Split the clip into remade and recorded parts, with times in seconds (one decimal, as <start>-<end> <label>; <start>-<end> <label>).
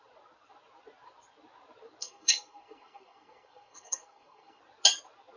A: 0.0-2.0 recorded; 2.0-4.6 remade; 4.6-5.4 recorded